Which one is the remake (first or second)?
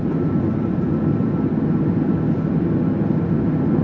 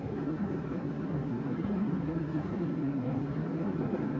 second